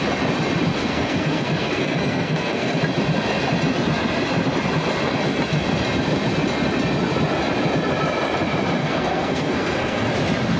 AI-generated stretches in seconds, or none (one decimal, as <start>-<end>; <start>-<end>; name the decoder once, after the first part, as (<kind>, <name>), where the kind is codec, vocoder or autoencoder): 0.7-2.8 (codec, SNAC); 8.8-10.1